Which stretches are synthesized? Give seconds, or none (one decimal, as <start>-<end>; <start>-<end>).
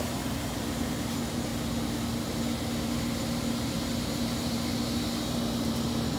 0.0-1.5; 3.2-6.2